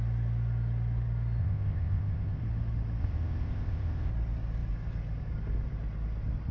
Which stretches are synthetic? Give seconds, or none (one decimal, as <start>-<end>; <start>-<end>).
1.4-2.4; 3.0-4.1